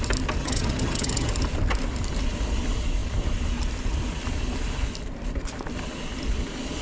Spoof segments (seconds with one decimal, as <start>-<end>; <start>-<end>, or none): 0.4-1.3